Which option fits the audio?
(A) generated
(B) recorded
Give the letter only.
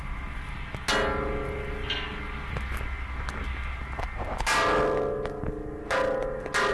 B